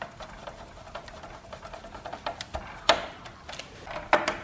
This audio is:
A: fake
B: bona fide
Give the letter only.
B